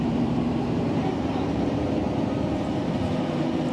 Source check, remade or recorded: remade